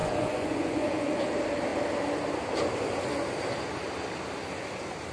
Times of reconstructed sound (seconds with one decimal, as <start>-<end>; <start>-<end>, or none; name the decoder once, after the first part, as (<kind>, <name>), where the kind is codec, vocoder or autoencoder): 0.0-1.2 (vocoder, Vocos)